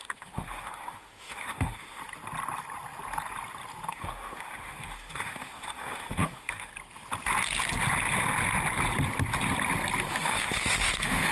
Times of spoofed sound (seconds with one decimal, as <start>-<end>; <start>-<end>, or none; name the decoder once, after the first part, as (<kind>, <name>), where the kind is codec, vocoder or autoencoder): 0.0-2.0 (autoencoder, DAC-VAE); 3.9-6.7; 10.1-11.3